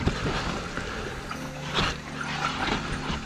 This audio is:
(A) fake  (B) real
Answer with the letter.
B